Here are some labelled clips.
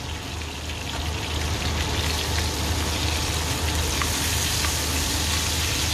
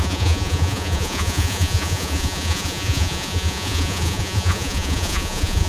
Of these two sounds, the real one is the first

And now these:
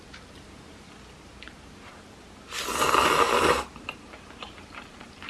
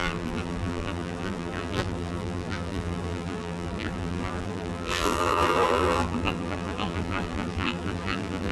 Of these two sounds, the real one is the first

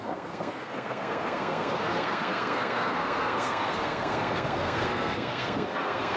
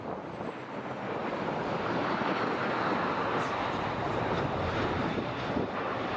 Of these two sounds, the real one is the second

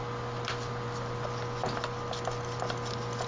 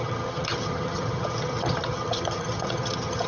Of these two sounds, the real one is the first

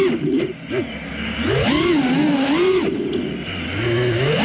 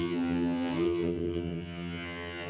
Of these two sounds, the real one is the first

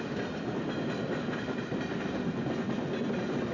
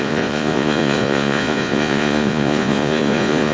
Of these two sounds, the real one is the first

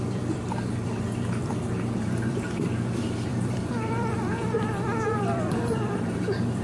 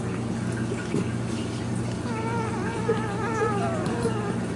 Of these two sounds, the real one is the second